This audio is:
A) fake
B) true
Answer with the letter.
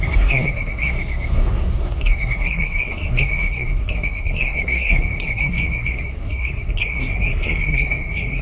A